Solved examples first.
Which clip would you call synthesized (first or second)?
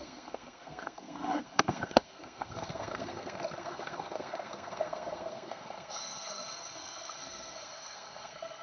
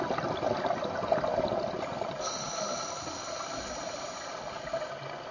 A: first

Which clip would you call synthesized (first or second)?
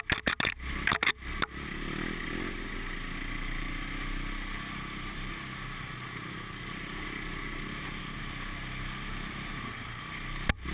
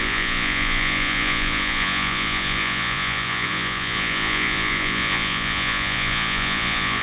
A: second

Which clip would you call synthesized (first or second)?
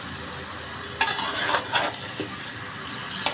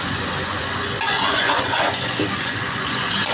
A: second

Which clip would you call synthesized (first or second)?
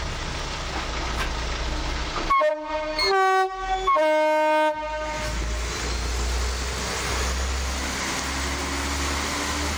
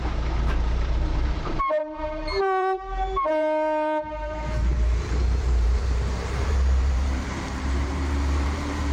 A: second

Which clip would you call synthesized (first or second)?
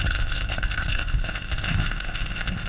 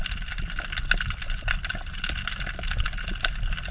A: first